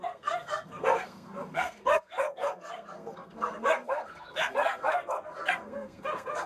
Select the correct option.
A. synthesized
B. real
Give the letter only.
A